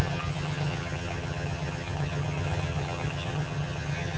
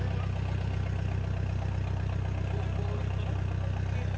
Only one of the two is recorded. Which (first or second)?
second